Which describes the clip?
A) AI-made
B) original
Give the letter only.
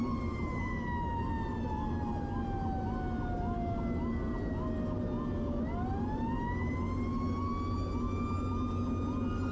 B